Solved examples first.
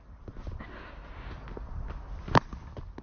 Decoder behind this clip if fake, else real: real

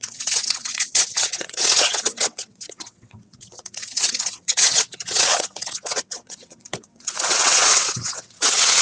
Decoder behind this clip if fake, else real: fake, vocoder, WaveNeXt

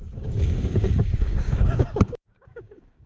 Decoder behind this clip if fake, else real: fake, codec, DAC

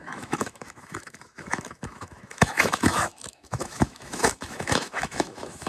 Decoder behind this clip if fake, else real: fake, autoencoder, DAC-VAE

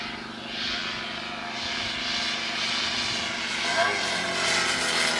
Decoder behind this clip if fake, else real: real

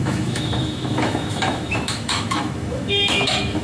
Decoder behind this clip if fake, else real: fake, autoencoder, DAC-VAE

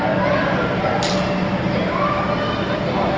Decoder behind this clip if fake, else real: real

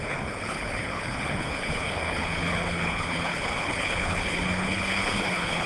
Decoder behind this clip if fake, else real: fake, codec, HILCodec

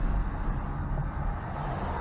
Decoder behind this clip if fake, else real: real